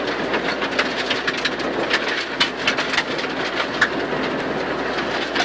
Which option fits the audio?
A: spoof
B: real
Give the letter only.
B